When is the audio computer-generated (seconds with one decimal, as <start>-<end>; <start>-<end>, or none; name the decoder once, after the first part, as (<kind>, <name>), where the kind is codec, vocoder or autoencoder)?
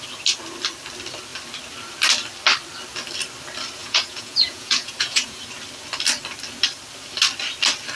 3.8-5.4 (vocoder, Vocos)